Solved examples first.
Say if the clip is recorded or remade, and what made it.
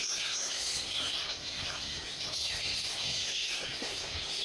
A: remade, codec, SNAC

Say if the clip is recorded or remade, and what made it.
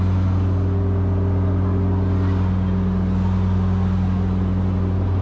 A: recorded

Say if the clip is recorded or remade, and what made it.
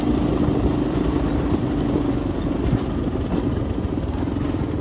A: recorded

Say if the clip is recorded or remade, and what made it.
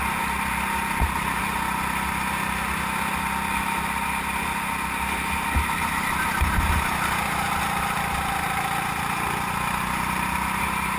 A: recorded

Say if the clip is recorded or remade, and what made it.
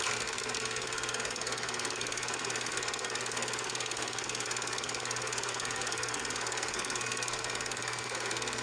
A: remade, codec, SNAC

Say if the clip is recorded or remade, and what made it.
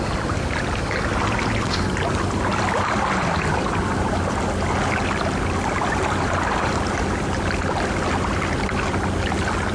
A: recorded